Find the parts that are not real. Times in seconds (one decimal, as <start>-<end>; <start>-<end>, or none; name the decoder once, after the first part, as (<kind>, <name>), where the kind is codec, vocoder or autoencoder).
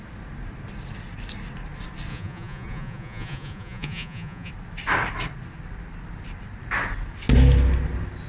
2.1-4.5 (vocoder, Vocos)